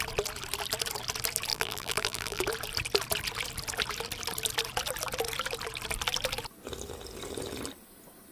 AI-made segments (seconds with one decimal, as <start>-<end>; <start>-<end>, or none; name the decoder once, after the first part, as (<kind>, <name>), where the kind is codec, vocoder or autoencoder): 1.5-2.4 (vocoder, BigVGAN v2)